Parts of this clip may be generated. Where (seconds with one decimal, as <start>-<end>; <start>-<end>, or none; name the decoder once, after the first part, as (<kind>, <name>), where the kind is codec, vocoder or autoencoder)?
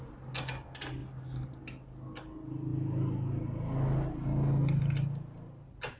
none